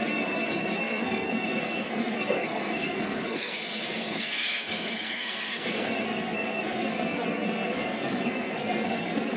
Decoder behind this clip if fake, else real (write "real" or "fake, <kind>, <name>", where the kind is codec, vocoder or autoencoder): fake, codec, SNAC